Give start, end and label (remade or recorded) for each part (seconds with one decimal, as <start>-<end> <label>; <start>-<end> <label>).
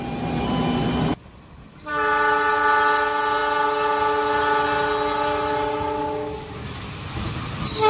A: 0.0-7.9 recorded